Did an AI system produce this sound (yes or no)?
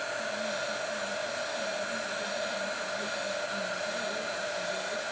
no